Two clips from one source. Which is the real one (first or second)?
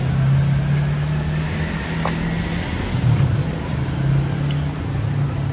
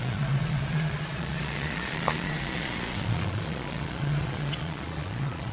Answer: first